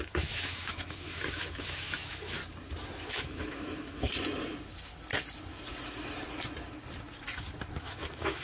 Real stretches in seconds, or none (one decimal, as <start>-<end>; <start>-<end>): 2.4-3.1; 4.1-7.8

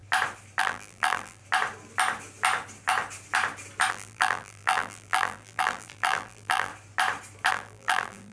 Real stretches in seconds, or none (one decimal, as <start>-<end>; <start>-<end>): 0.0-0.6; 1.4-3.9; 6.7-7.5

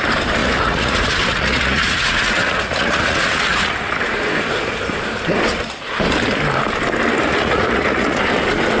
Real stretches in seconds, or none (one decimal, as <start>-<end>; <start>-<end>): 0.0-0.4; 4.3-7.3; 8.2-8.8

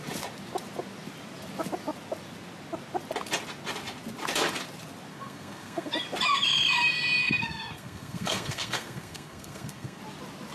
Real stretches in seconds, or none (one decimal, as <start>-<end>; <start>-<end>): 0.0-5.1; 5.9-7.2; 10.0-10.5

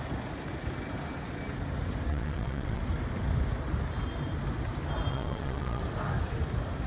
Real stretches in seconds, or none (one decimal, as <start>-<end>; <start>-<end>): 0.0-2.1; 2.8-5.1; 5.8-6.9

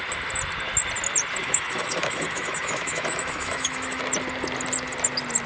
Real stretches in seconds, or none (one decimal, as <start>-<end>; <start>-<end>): 0.0-1.4; 4.0-5.5

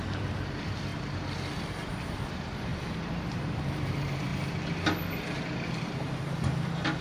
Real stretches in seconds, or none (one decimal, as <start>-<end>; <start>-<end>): 0.9-2.0; 4.3-5.4